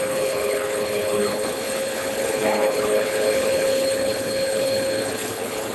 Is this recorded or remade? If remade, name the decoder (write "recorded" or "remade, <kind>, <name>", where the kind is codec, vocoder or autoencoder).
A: remade, codec, HILCodec